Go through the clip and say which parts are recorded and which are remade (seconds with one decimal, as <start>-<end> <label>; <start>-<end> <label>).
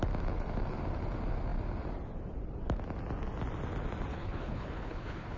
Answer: 0.0-4.1 recorded; 4.1-5.4 remade